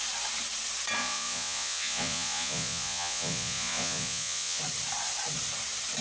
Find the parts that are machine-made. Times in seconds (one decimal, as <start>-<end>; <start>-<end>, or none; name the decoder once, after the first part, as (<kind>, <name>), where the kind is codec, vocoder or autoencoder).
1.0-4.6 (vocoder, Vocos)